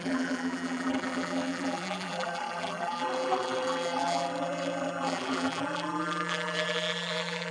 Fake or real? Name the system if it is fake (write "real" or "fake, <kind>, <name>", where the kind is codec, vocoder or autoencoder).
fake, vocoder, BigVGAN v2